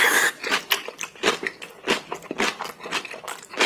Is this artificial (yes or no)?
no